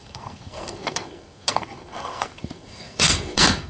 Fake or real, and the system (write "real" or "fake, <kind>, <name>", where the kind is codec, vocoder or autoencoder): fake, codec, SNAC